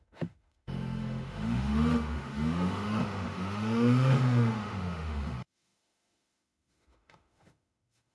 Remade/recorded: remade